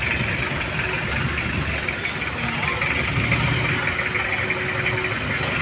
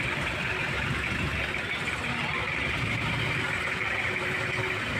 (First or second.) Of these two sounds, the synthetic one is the second